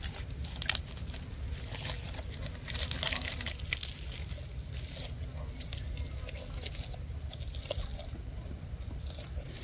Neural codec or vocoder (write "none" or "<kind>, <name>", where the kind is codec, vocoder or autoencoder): none